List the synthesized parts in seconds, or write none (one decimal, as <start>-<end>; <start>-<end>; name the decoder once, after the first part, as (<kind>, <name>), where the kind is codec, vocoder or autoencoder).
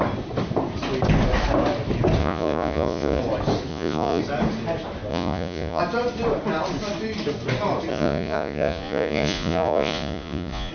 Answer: 2.2-3.2 (vocoder, Vocos); 3.7-4.2; 5.1-5.8; 7.9-10.7